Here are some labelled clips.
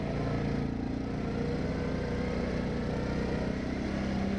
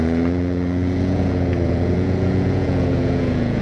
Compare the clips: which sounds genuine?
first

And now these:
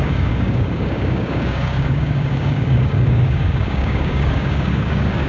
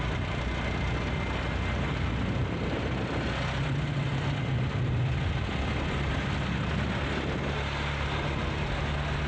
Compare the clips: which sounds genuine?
second